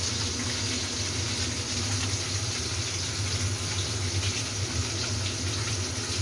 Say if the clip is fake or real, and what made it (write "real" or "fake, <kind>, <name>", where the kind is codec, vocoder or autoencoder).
real